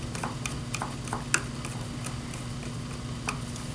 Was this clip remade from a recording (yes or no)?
no